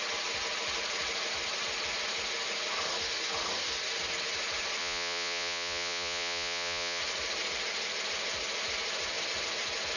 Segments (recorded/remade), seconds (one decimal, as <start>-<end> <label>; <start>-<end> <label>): 0.0-4.8 recorded; 4.8-7.0 remade; 7.0-10.0 recorded